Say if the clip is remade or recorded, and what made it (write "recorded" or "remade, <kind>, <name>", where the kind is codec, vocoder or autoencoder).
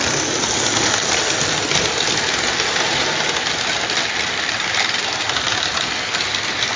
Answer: recorded